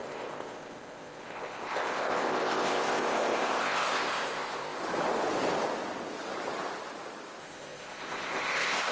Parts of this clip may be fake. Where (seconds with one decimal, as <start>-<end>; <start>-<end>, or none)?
0.0-4.8; 7.4-8.9